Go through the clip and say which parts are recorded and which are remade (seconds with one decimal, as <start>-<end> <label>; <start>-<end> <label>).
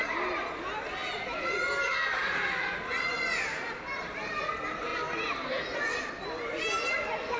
0.0-7.4 recorded